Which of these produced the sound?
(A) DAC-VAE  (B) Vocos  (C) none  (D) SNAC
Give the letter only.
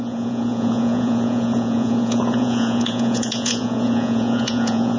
B